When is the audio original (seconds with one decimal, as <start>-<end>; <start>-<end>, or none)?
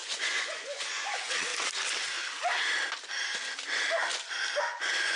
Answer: 1.5-4.6